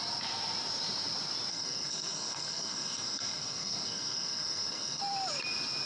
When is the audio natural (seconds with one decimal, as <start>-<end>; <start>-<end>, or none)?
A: 0.0-1.5; 5.0-5.9